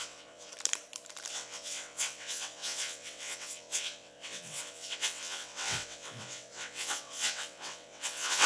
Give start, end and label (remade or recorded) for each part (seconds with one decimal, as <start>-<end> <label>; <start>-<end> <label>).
0.0-0.5 remade; 0.5-1.3 recorded; 1.3-8.5 remade